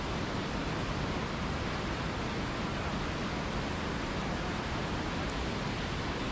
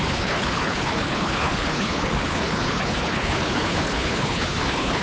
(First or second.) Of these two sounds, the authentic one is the first